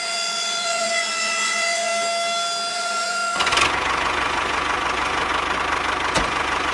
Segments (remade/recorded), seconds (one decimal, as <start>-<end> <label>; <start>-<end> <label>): 0.0-1.9 remade; 1.9-2.7 recorded; 2.7-5.3 remade; 5.3-6.1 recorded; 6.1-6.7 remade